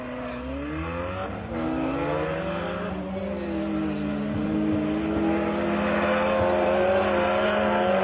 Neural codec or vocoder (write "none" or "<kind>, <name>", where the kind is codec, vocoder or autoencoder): none